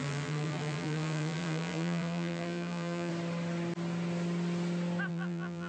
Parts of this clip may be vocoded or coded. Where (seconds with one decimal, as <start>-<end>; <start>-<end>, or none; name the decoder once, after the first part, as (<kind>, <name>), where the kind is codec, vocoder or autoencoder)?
0.0-3.1 (vocoder, BigVGAN v2); 5.1-5.7